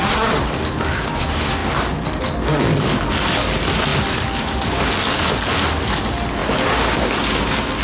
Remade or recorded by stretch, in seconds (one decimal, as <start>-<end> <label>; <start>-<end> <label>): 0.0-7.8 recorded